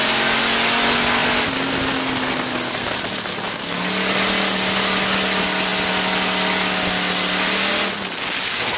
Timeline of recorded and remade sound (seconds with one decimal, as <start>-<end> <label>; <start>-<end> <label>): 0.0-8.8 recorded